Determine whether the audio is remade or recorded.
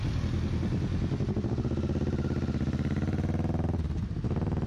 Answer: recorded